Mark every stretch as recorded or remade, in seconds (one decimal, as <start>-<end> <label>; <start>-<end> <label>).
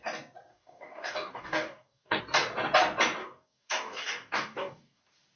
0.0-0.5 recorded; 0.5-2.2 remade; 2.2-3.2 recorded; 3.2-5.0 remade; 5.0-5.4 recorded